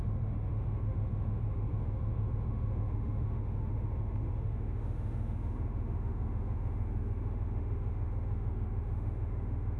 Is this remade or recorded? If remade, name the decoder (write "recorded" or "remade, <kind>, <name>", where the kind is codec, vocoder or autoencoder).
remade, autoencoder, DAC-VAE